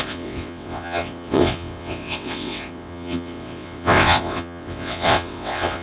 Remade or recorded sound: remade